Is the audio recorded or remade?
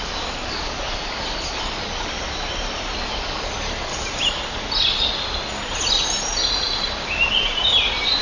recorded